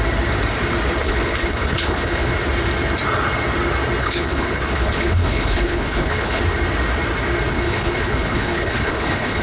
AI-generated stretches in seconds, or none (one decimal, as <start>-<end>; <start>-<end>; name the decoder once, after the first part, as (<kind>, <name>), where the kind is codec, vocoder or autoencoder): 1.0-2.3 (codec, HILCodec); 4.0-6.4; 7.5-9.4